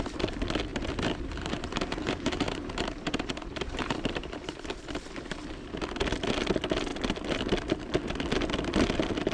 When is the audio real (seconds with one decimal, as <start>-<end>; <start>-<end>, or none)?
0.0-0.7; 4.8-9.3

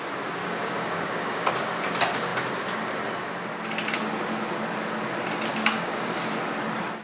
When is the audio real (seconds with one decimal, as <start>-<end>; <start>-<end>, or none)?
0.0-0.4; 1.5-5.5; 6.2-7.0

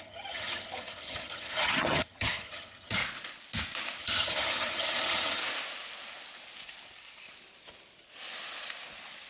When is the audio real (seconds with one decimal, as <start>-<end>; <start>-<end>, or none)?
3.0-4.0; 5.4-9.3

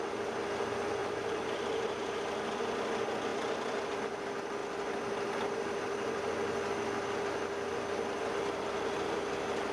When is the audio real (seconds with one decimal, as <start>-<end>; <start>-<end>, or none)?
0.0-1.0; 2.1-9.7

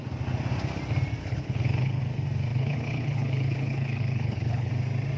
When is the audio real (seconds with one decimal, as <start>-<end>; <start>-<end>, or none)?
0.0-1.2; 2.0-2.5; 4.7-5.2